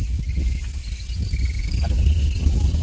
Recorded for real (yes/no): no